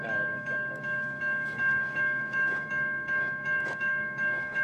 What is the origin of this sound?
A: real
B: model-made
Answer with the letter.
B